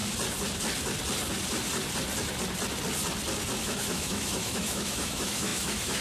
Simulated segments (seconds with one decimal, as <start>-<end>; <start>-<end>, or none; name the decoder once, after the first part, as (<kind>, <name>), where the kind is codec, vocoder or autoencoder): 3.6-6.0 (autoencoder, DAC-VAE)